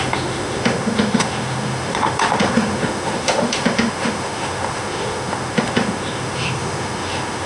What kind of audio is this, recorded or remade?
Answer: remade